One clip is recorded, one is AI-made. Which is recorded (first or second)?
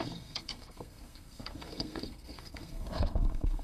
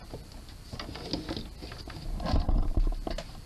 second